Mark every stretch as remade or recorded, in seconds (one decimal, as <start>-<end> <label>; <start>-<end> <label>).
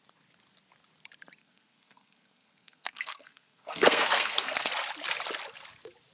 0.0-1.4 recorded; 1.4-4.7 remade; 4.7-6.1 recorded